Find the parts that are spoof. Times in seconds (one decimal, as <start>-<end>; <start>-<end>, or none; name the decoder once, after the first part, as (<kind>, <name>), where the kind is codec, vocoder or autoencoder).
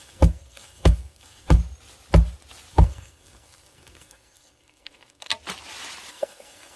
0.0-1.6 (codec, SNAC); 2.7-5.3; 6.1-6.8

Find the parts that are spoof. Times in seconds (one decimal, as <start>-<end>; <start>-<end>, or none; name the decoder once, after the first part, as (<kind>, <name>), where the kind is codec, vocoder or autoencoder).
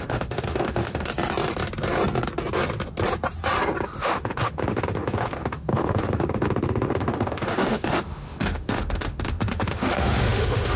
0.0-1.1 (autoencoder, DAC-VAE); 4.0-10.8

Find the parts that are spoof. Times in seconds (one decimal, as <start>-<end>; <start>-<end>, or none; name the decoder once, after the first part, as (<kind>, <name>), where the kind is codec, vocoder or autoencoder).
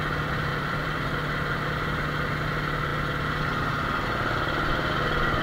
0.5-1.1 (vocoder, BigVGAN v2)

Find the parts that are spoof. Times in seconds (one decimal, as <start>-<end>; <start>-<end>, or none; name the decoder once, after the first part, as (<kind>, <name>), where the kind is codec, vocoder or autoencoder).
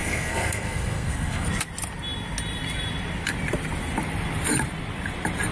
0.0-1.5 (codec, SNAC)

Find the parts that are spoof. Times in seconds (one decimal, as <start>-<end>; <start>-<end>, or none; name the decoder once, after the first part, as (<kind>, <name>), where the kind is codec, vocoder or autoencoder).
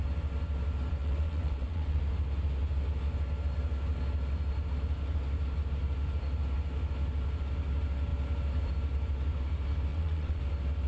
1.0-2.0 (vocoder, WaveNeXt); 9.9-10.4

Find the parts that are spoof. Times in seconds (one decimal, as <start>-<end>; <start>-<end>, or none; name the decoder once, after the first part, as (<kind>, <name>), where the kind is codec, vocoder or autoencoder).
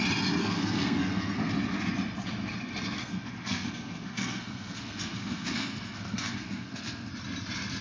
0.4-1.5 (codec, SNAC); 3.0-7.1